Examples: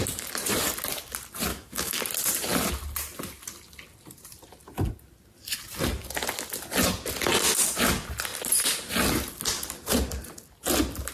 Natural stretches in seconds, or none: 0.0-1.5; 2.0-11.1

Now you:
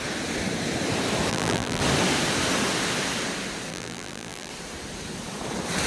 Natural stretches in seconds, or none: 0.0-1.3; 1.8-3.7; 4.5-5.9

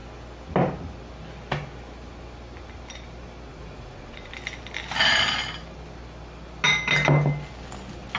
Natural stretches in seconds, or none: 0.0-3.5; 4.3-8.2

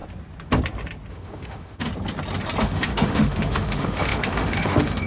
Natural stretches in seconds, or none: 0.0-1.1; 1.9-2.6

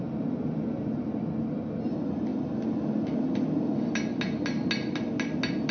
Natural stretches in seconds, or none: 0.0-5.7

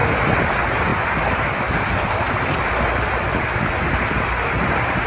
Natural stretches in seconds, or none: none

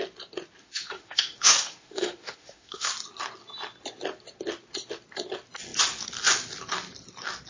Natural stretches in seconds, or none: 0.0-0.6; 2.9-7.5